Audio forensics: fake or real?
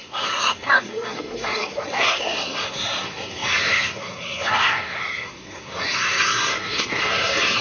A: fake